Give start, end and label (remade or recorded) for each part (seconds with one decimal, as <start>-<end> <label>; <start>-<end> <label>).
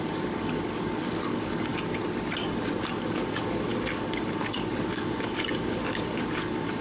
0.0-1.7 remade; 1.7-2.8 recorded; 2.8-6.8 remade